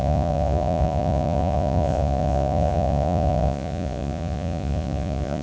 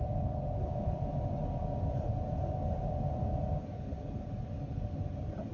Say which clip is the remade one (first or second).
first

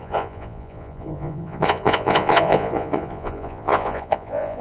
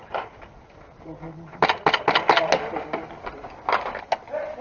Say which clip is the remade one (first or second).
first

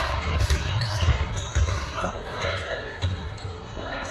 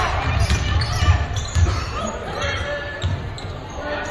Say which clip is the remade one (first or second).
first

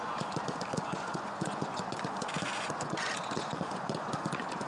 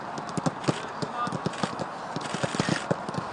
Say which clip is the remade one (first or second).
first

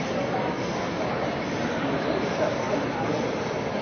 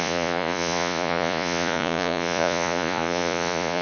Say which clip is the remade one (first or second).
second